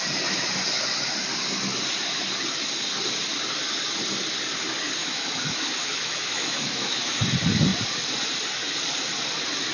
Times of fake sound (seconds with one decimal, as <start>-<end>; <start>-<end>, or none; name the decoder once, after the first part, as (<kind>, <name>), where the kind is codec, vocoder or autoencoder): 5.0-7.1 (autoencoder, DAC-VAE)